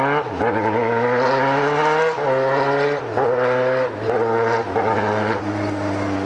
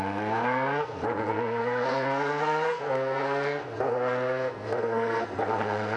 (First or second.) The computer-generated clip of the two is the second